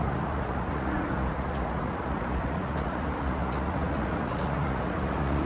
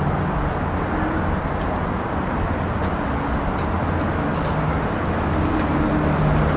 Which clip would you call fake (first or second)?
first